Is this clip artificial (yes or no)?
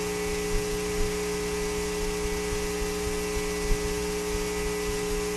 no